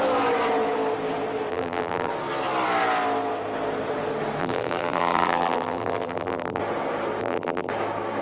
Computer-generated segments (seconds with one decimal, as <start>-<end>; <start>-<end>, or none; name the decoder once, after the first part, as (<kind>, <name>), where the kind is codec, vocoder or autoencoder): 1.5-2.1 (vocoder, BigVGAN v2); 4.4-6.6; 7.2-7.7